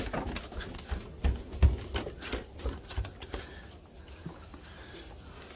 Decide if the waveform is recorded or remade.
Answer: recorded